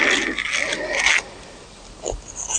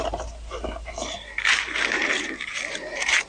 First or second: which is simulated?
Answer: second